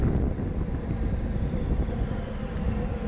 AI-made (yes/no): no